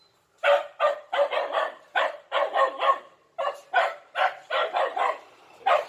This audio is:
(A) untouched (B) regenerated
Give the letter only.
A